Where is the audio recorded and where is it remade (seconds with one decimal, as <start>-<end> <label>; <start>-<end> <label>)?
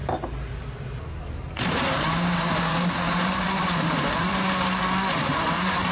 0.0-1.1 recorded; 1.1-5.9 remade